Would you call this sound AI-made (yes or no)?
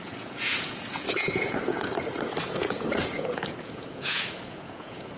yes